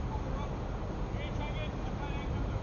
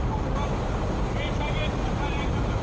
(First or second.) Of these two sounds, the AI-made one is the second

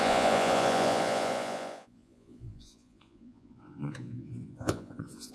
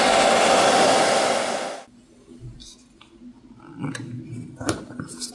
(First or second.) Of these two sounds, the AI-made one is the first